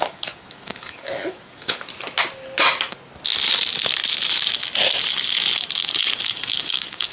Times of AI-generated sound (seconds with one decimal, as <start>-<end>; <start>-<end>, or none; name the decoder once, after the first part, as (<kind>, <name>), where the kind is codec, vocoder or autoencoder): 0.0-1.9 (codec, DAC); 6.2-7.1